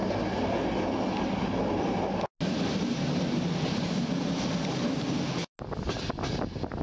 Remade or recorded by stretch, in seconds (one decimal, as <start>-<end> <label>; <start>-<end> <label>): 0.0-6.8 recorded